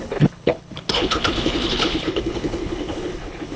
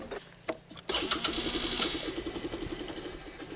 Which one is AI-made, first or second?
first